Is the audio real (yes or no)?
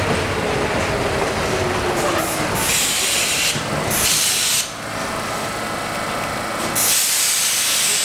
yes